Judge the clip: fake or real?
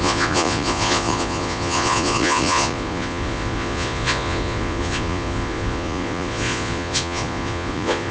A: fake